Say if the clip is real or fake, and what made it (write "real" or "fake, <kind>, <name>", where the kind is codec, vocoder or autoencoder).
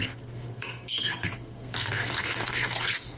fake, codec, SNAC